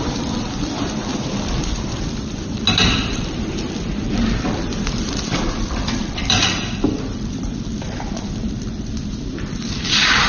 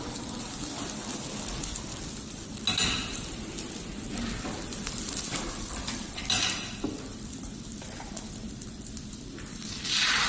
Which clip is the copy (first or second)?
first